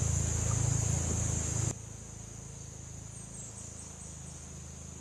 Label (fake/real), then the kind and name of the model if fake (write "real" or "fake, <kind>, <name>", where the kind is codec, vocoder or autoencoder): real